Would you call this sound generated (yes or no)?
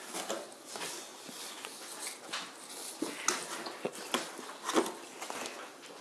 no